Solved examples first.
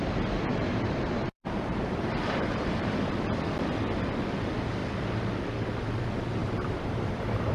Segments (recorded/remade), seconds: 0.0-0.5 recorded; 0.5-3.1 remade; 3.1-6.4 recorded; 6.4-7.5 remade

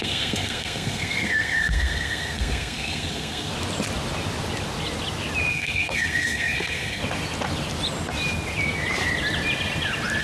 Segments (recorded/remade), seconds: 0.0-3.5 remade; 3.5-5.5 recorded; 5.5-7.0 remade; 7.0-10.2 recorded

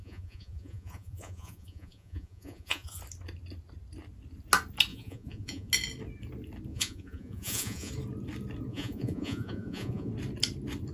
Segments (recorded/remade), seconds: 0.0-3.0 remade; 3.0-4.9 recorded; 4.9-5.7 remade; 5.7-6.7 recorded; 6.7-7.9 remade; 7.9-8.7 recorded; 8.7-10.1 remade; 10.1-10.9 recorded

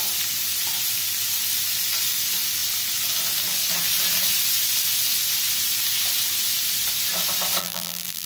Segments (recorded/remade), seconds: 0.0-7.6 recorded; 7.6-8.3 remade

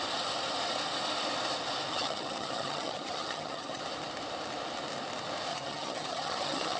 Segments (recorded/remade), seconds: 0.0-1.9 recorded; 1.9-3.8 remade; 3.8-5.5 recorded; 5.5-6.8 remade

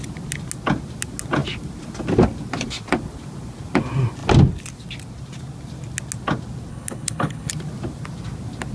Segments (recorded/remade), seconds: 0.0-6.7 recorded; 6.7-7.5 remade; 7.5-8.7 recorded

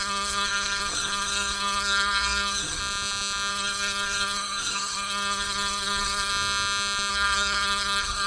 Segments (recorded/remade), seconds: 0.0-2.8 remade; 2.8-3.5 recorded; 3.5-6.3 remade; 6.3-7.1 recorded; 7.1-8.3 remade

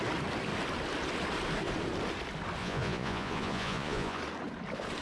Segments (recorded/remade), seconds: 0.0-2.6 recorded; 2.6-4.2 remade; 4.2-5.0 recorded